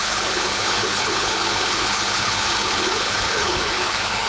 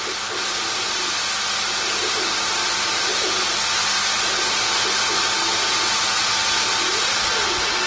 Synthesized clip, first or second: first